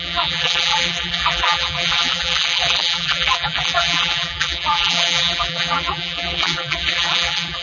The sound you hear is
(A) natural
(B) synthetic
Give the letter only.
B